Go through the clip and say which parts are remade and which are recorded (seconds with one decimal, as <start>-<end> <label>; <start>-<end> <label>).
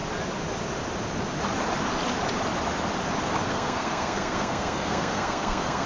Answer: 0.0-3.5 recorded; 3.5-5.9 remade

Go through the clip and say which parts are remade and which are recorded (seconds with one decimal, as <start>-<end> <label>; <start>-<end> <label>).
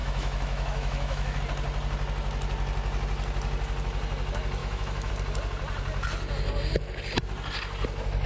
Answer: 0.0-1.4 remade; 1.4-4.6 recorded; 4.6-5.1 remade; 5.1-8.3 recorded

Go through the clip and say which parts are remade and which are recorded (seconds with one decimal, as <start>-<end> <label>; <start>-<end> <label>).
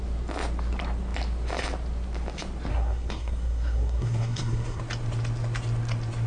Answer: 0.0-2.7 recorded; 2.7-4.8 remade; 4.8-6.3 recorded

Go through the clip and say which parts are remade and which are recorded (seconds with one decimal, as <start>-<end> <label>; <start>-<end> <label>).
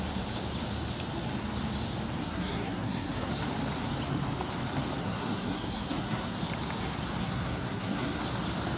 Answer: 0.0-2.2 recorded; 2.2-3.3 remade; 3.3-5.0 recorded; 5.0-6.4 remade; 6.4-7.2 recorded; 7.2-8.2 remade; 8.2-8.8 recorded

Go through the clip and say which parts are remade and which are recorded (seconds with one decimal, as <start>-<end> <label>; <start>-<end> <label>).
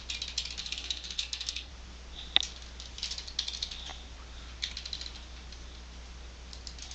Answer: 0.0-0.6 recorded; 0.6-1.7 remade; 1.7-6.9 recorded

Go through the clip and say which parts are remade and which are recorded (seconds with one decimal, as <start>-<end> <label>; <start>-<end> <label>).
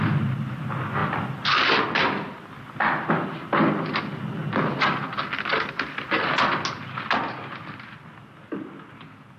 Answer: 0.0-9.4 recorded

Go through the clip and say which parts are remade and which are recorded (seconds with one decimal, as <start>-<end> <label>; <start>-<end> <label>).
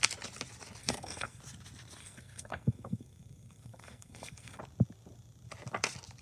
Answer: 0.0-0.8 recorded; 0.8-1.4 remade; 1.4-2.0 recorded; 2.0-4.6 remade; 4.6-6.2 recorded